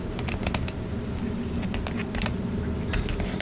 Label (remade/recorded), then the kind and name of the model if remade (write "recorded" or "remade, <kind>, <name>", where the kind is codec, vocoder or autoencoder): recorded